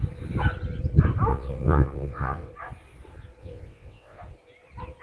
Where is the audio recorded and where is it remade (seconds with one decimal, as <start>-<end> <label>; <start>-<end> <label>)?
0.0-1.3 recorded; 1.3-2.5 remade; 2.5-3.4 recorded; 3.4-4.2 remade; 4.2-5.0 recorded